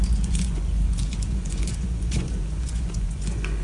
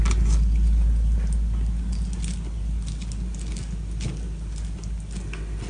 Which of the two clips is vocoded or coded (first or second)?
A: first